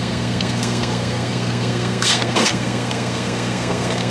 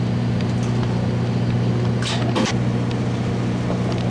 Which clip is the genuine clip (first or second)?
second